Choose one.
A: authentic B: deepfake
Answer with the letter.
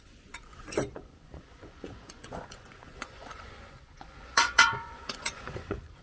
B